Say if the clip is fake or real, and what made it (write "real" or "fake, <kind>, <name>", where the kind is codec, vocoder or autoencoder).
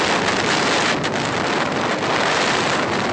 real